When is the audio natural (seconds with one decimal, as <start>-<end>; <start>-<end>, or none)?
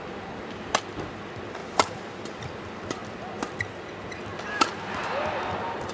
0.0-1.6; 2.4-5.9